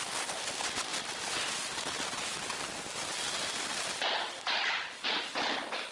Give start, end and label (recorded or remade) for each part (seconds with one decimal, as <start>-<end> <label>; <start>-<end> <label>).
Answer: 0.0-5.9 recorded